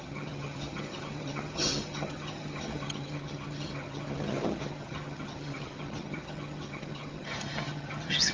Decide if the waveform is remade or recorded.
remade